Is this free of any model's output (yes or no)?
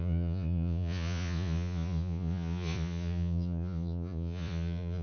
no